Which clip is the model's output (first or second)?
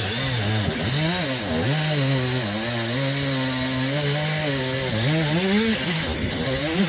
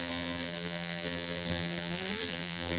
second